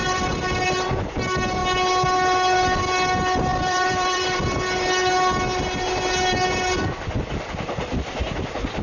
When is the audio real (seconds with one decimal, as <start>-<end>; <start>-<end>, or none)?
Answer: 1.1-3.5; 4.5-8.8